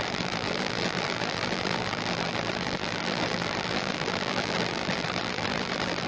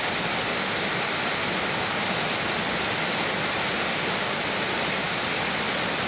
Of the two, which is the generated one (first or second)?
first